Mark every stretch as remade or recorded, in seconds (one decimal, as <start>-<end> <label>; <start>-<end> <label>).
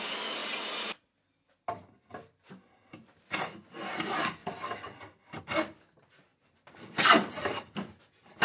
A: 0.0-6.3 recorded; 6.3-7.6 remade; 7.6-8.4 recorded